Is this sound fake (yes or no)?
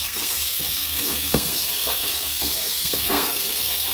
yes